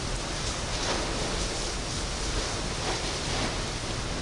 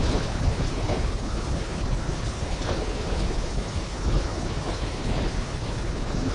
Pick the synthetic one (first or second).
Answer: second